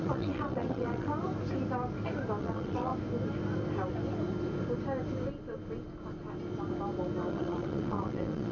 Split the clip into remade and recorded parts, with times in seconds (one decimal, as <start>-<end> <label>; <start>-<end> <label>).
0.0-1.1 remade; 1.1-2.4 recorded; 2.4-2.9 remade; 2.9-7.3 recorded; 7.3-8.5 remade